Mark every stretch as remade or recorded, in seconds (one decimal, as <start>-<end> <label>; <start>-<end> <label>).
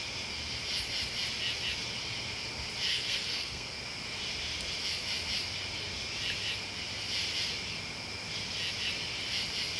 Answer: 0.0-2.9 recorded; 2.9-3.8 remade; 3.8-9.8 recorded